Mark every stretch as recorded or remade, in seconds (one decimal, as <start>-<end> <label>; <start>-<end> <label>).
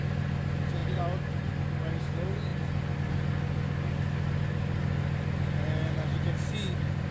0.0-7.1 recorded